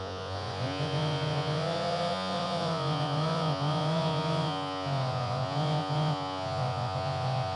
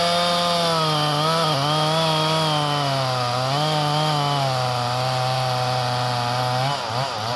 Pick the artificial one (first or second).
first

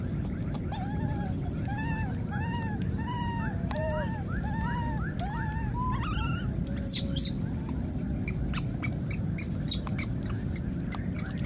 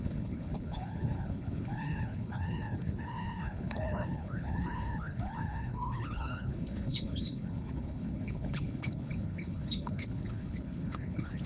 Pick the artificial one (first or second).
second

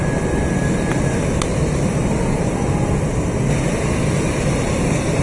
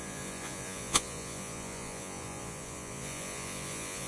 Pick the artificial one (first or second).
second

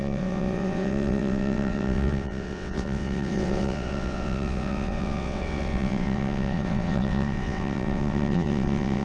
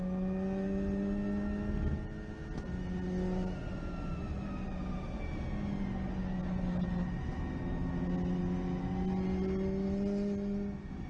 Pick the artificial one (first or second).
first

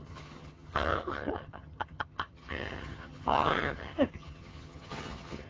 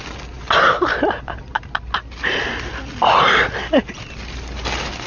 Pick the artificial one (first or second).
first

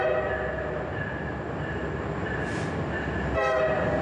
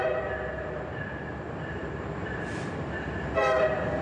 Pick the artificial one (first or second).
second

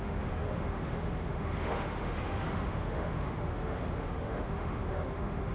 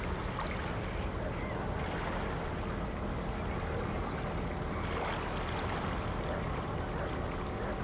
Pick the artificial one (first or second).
first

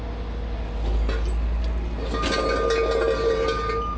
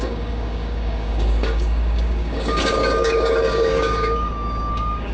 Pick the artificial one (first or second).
second